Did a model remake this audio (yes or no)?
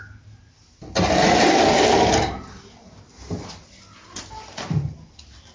no